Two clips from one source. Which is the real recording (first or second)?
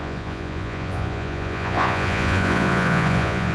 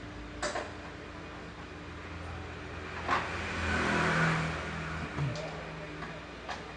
second